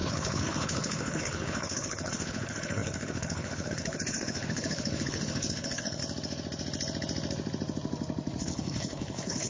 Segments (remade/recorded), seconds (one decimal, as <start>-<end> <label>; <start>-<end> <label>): 0.0-6.0 remade; 6.0-8.4 recorded; 8.4-9.5 remade